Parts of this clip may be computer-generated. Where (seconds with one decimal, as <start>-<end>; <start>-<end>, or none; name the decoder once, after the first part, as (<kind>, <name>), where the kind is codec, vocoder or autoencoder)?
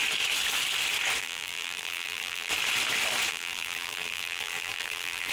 1.2-2.5 (vocoder, BigVGAN v2); 3.3-5.3